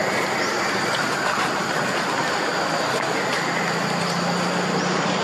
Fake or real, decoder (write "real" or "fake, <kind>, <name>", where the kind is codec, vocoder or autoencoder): real